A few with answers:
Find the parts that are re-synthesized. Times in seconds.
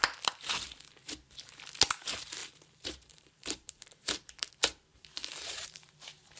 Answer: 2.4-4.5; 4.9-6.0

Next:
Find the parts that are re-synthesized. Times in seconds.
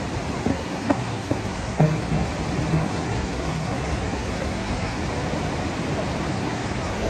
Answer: 0.5-2.3; 2.7-5.0; 6.3-7.1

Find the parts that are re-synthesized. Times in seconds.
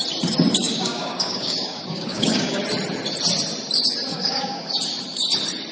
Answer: 0.6-2.6; 4.1-4.7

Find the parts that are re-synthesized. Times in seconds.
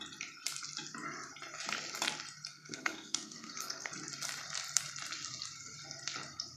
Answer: 2.5-3.9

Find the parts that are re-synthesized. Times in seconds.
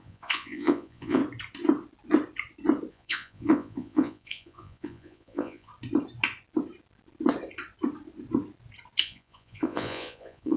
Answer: 0.0-1.2; 2.9-5.7; 9.0-10.6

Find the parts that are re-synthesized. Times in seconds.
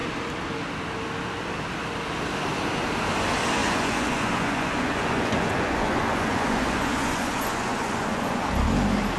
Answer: 3.6-8.4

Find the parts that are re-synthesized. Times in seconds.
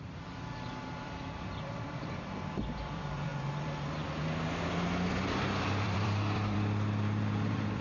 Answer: 0.0-3.3; 5.1-7.8